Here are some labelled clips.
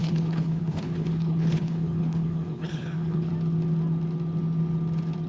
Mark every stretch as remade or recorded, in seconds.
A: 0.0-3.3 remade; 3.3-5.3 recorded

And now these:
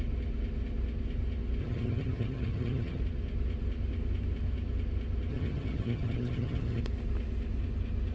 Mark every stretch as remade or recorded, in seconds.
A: 0.0-1.6 recorded; 1.6-3.0 remade; 3.0-5.3 recorded; 5.3-6.8 remade; 6.8-8.1 recorded